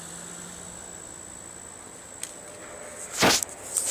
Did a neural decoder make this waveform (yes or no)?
no